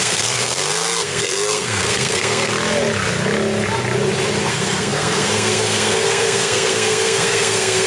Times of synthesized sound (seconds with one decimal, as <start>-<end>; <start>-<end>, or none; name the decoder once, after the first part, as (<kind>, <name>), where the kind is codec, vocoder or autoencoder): 0.0-2.5 (codec, SNAC); 4.5-7.9